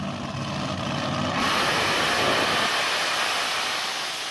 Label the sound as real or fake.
real